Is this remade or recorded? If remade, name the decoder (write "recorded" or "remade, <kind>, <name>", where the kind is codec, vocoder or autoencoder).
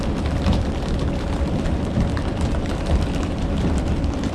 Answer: remade, vocoder, BigVGAN v2